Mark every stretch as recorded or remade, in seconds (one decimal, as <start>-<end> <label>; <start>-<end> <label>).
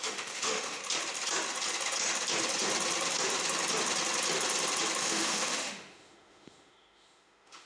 0.0-0.8 remade; 0.8-5.0 recorded; 5.0-7.7 remade